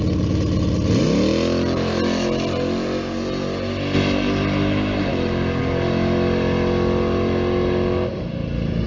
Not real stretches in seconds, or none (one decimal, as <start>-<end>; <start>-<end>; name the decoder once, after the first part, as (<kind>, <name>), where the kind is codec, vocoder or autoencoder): none